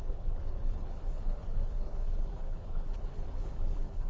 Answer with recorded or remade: remade